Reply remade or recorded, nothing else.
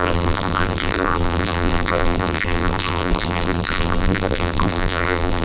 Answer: remade